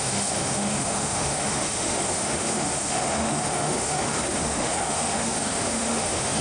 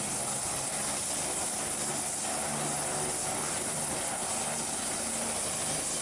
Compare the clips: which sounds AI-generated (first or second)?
first